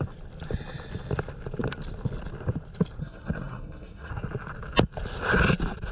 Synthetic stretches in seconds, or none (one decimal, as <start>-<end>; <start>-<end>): 3.0-4.1

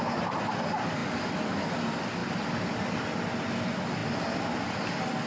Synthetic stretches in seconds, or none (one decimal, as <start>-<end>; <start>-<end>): none

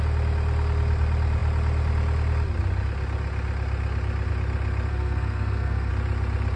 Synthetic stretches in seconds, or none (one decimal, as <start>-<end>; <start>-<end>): 4.9-5.9

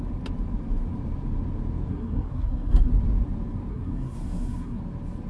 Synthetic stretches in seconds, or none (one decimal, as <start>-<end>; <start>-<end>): 1.9-2.9; 3.7-4.8

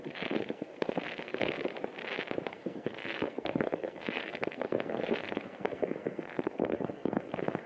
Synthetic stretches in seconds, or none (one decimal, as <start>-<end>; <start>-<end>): 0.0-1.7; 2.5-7.7

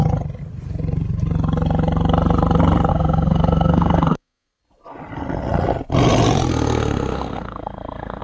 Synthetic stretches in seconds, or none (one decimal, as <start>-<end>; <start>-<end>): 2.9-4.6; 6.5-8.2

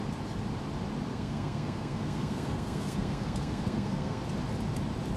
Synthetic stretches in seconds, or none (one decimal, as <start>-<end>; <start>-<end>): 1.1-4.2